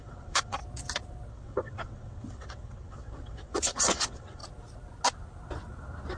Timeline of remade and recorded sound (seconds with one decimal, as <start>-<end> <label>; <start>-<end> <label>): 0.0-0.6 remade; 0.6-1.3 recorded; 1.3-4.4 remade; 4.4-6.2 recorded